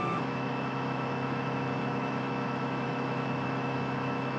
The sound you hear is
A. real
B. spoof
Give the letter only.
B